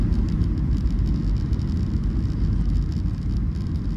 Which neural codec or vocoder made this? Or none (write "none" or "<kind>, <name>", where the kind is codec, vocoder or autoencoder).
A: none